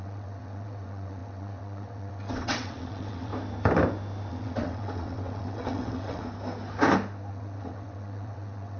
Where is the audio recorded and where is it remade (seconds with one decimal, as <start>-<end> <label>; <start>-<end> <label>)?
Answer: 0.0-3.3 remade; 3.3-4.3 recorded; 4.3-6.2 remade; 6.2-7.3 recorded; 7.3-8.8 remade